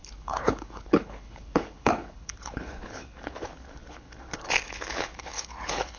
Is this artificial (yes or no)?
yes